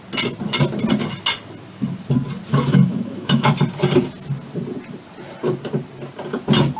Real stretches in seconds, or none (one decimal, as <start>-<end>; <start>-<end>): 0.0-2.5; 3.5-6.8